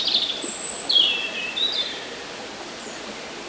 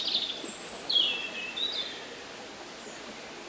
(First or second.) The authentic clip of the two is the second